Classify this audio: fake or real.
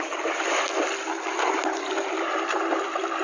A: real